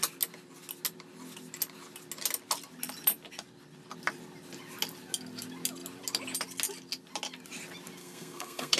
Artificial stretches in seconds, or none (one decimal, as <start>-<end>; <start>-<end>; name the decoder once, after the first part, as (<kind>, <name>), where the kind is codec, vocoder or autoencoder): 8.0-8.8 (codec, SNAC)